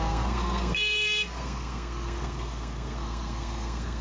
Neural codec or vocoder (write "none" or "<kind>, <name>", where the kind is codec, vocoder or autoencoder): codec, SNAC